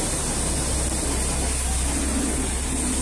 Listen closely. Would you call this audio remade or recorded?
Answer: recorded